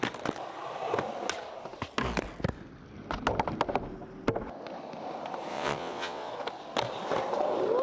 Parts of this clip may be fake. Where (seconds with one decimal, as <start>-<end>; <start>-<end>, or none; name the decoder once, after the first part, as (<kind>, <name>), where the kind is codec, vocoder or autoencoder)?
5.5-6.3 (vocoder, WaveNeXt)